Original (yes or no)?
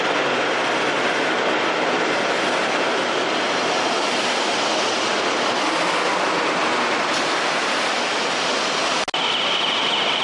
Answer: yes